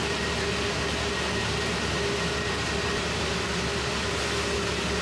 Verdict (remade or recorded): recorded